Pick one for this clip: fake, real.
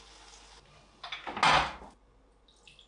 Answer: real